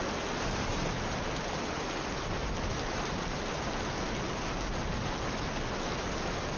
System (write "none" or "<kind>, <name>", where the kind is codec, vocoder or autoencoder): none